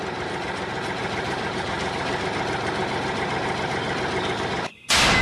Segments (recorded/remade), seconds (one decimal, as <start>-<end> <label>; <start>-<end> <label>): 0.0-1.0 recorded; 1.0-2.2 remade; 2.2-5.2 recorded